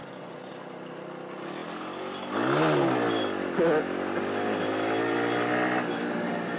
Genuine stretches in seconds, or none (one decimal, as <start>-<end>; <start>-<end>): 0.5-6.6